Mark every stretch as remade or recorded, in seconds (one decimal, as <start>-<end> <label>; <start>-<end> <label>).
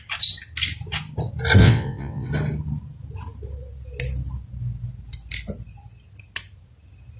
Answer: 0.0-1.6 recorded; 1.6-2.3 remade; 2.3-7.2 recorded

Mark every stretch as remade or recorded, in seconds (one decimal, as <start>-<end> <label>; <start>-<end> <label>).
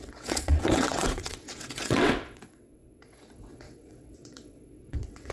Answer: 0.0-5.3 remade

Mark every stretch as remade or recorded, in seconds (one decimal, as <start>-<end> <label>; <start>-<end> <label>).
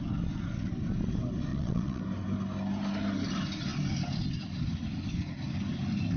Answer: 0.0-1.5 recorded; 1.5-2.0 remade; 2.0-6.2 recorded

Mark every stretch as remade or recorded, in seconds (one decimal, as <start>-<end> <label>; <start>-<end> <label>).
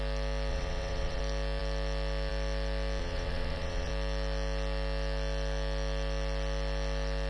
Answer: 0.0-0.5 recorded; 0.5-1.2 remade; 1.2-3.0 recorded; 3.0-3.9 remade; 3.9-7.3 recorded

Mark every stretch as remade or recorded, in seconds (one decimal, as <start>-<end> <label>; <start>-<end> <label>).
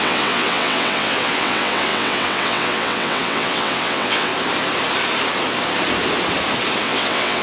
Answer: 0.0-4.3 remade; 4.3-6.8 recorded; 6.8-7.4 remade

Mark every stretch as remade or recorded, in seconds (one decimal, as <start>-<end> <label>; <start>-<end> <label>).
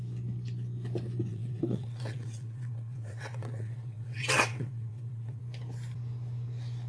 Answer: 0.0-1.3 recorded; 1.3-5.4 remade; 5.4-6.9 recorded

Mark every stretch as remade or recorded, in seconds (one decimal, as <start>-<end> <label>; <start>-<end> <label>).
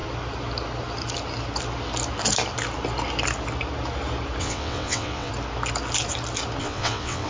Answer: 0.0-4.4 recorded; 4.4-5.3 remade; 5.3-6.6 recorded; 6.6-7.3 remade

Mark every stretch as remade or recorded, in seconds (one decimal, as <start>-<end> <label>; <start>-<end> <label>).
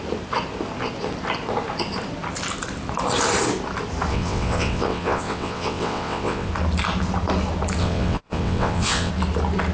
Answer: 0.0-4.1 recorded; 4.1-6.5 remade; 6.5-7.8 recorded; 7.8-9.1 remade; 9.1-9.7 recorded